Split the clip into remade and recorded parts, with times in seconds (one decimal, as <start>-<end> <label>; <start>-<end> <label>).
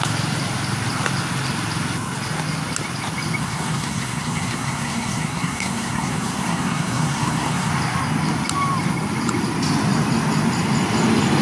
0.0-3.4 recorded; 3.4-7.7 remade; 7.7-11.4 recorded